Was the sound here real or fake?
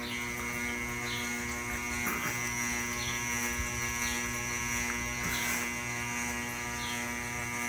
real